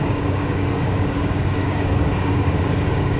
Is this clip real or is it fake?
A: fake